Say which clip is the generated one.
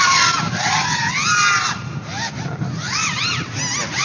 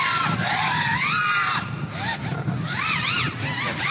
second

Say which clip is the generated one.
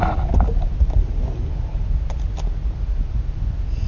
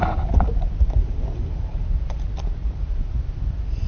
second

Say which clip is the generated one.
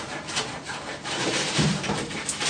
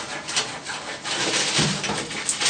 first